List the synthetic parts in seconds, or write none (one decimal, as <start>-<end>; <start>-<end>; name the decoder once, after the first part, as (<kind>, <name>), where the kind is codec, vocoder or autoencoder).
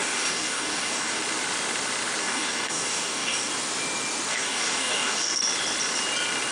0.0-1.2 (codec, DAC); 2.2-3.5; 4.3-5.4